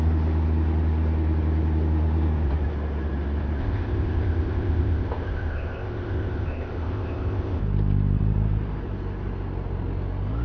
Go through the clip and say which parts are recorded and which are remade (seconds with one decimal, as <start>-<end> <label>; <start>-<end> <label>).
0.0-3.6 recorded; 3.6-7.6 remade; 7.6-10.4 recorded